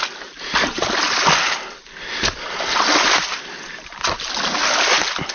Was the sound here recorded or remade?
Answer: recorded